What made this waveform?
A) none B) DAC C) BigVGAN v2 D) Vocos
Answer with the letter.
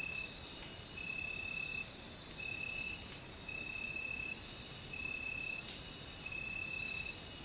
A